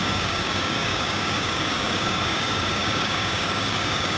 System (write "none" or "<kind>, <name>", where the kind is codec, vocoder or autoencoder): codec, DAC